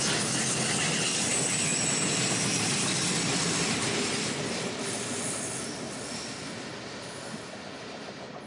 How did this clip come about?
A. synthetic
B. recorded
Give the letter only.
B